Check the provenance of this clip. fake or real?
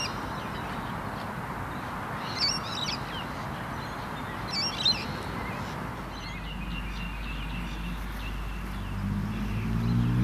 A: real